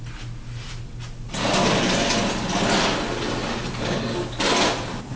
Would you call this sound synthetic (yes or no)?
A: no